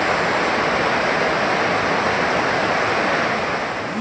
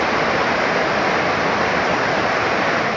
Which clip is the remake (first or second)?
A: second